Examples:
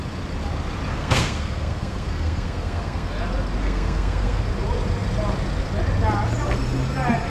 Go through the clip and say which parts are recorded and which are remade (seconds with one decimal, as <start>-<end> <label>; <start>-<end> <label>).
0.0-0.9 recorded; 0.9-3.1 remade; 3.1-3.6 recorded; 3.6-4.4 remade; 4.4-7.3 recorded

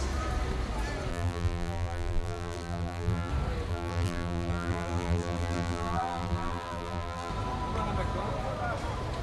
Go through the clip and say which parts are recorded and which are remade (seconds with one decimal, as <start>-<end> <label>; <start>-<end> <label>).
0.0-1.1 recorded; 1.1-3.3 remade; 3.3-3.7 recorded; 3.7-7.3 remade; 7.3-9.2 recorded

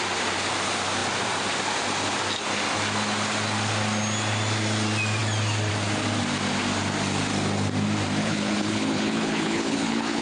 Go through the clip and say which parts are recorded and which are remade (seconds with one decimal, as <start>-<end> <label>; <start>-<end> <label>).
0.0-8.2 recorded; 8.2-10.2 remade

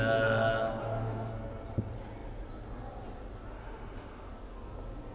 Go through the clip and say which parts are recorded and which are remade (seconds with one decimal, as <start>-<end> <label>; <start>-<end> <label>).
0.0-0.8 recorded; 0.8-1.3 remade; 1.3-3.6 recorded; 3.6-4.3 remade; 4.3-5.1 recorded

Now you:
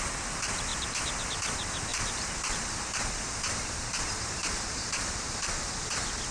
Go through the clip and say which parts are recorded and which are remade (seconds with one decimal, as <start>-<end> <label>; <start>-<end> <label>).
0.0-0.7 recorded; 0.7-1.3 remade; 1.3-1.9 recorded; 1.9-5.7 remade; 5.7-6.3 recorded